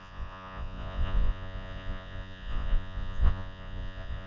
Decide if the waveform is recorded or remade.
remade